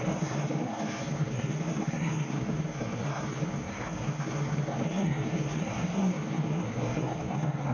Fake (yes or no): yes